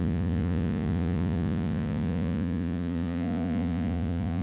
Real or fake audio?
fake